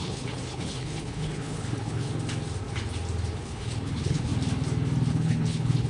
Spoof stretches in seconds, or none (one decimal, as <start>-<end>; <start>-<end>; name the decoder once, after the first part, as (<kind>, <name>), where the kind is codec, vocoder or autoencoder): 0.0-2.1 (codec, HILCodec); 3.4-4.3; 5.1-5.9